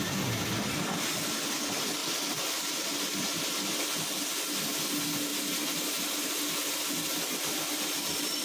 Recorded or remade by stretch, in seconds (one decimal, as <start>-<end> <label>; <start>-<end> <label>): 0.0-8.4 recorded